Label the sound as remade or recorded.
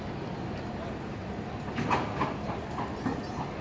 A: recorded